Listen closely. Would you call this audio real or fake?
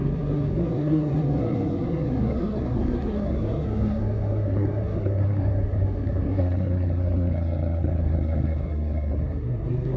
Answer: fake